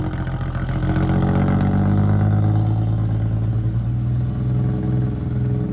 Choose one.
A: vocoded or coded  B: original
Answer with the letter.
B